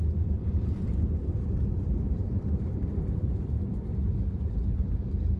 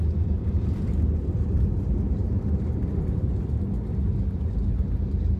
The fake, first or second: first